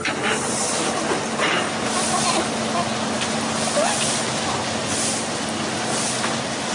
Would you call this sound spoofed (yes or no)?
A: no